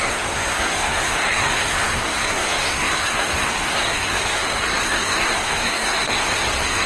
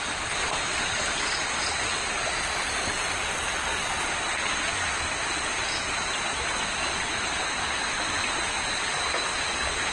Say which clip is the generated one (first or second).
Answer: first